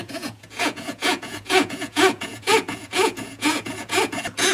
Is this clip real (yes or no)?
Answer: no